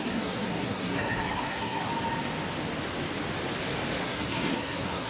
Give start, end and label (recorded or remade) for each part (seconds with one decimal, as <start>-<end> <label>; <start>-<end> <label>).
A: 0.0-1.9 remade; 1.9-4.0 recorded; 4.0-5.1 remade

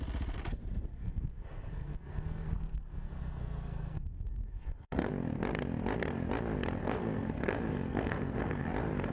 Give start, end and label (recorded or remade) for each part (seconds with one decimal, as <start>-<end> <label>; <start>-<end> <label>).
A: 0.0-0.9 recorded; 0.9-5.1 remade; 5.1-6.8 recorded; 6.8-8.6 remade; 8.6-9.1 recorded